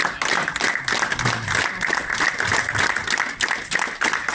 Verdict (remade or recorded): recorded